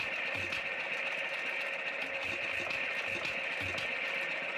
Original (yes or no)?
yes